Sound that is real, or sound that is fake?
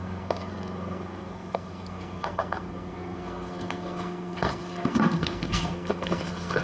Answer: fake